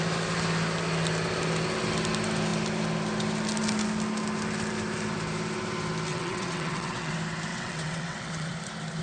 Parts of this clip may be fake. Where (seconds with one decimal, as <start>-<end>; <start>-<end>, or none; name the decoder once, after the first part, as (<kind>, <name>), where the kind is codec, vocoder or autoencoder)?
6.1-7.1 (vocoder, WaveNeXt); 7.5-8.5